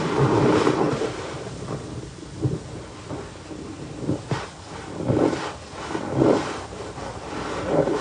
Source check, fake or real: real